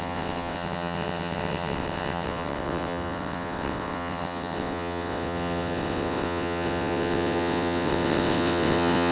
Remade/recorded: remade